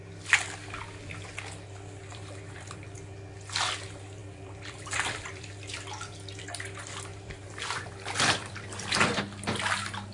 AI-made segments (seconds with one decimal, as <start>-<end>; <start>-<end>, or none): 2.1-2.8; 4.2-6.4; 7.1-9.2